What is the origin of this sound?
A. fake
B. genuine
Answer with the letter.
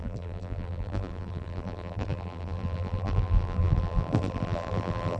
A